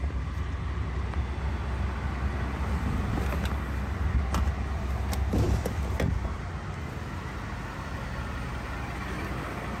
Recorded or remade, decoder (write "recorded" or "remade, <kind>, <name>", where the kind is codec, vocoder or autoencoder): recorded